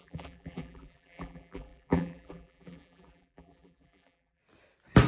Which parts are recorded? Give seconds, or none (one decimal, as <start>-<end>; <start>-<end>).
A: 4.4-5.1